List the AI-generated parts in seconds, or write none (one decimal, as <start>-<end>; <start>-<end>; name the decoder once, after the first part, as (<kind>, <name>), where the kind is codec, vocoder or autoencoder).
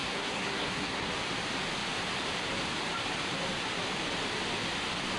0.0-1.1 (codec, SNAC)